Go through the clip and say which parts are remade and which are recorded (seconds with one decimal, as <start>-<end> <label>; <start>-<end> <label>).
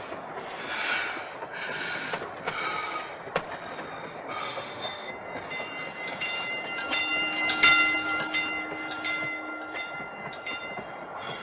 0.0-4.4 recorded; 4.4-5.1 remade; 5.1-11.4 recorded